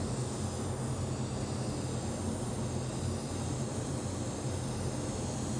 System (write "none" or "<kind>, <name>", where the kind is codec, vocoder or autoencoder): none